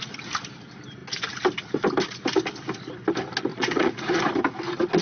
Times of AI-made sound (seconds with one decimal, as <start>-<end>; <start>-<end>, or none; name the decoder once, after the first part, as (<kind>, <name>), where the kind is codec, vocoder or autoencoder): 3.5-4.2 (vocoder, Vocos)